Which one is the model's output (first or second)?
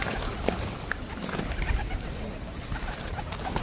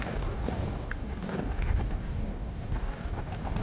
second